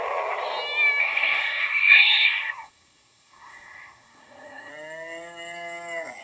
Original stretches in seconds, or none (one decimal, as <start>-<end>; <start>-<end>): 0.0-1.0; 4.7-6.2

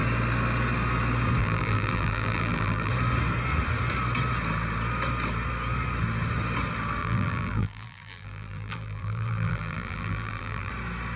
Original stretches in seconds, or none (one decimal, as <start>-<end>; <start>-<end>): 0.0-1.4; 2.9-7.0; 10.7-11.2